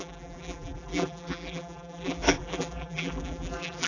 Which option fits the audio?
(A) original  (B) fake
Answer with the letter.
B